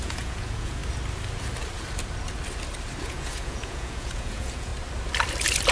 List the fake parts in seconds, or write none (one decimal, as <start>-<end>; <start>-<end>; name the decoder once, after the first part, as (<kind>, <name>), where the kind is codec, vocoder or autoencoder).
0.0-0.8 (vocoder, Vocos); 3.0-4.7